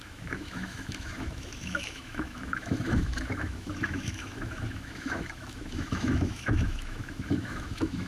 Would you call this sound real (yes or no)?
no